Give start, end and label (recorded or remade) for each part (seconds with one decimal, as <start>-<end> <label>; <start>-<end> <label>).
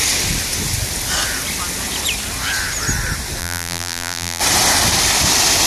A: 0.0-3.4 recorded; 3.4-4.4 remade; 4.4-5.7 recorded